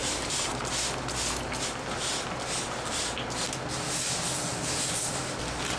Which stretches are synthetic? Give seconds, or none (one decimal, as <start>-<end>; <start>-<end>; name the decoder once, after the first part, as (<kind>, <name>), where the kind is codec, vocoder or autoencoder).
0.0-0.6 (vocoder, BigVGAN v2)